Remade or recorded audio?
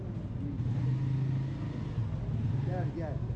recorded